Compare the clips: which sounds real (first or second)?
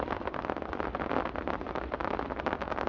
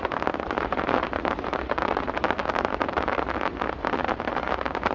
first